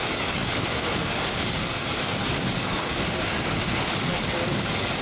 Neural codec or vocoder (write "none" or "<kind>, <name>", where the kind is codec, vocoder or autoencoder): codec, DAC